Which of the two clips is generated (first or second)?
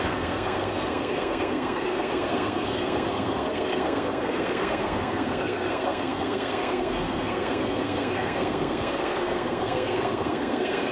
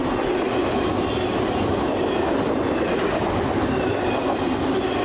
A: first